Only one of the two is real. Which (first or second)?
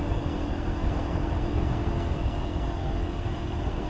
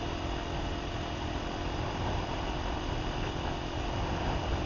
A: second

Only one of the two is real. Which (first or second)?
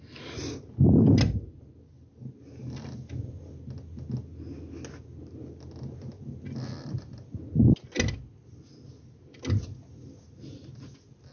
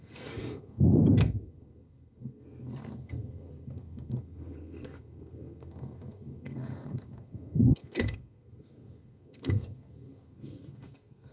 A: first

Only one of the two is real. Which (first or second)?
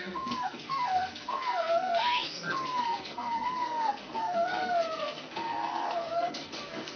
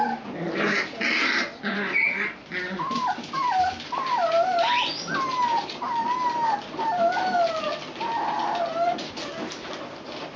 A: second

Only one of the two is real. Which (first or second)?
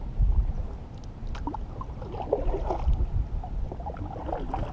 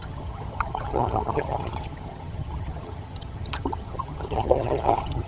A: first